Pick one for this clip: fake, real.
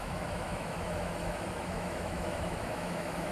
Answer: fake